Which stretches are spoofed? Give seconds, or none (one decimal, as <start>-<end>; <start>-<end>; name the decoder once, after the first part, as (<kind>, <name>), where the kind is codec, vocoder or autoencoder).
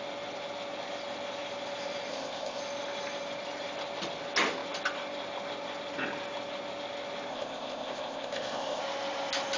2.1-2.6 (codec, ZipCodec); 7.3-8.8